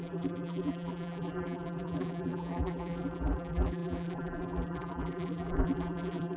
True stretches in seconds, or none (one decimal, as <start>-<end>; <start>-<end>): none